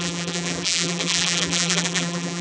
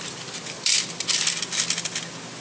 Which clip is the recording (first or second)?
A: second